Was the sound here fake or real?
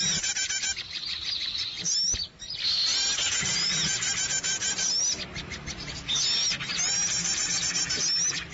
real